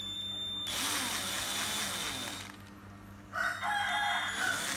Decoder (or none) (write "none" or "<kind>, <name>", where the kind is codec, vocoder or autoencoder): none